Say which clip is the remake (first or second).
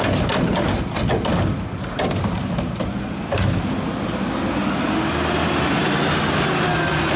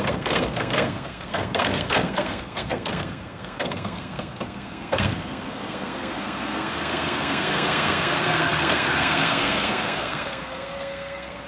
second